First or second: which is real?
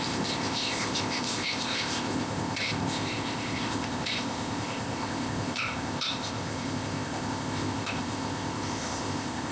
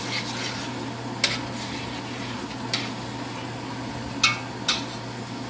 second